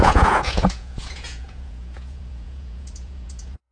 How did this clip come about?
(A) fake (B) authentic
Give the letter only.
A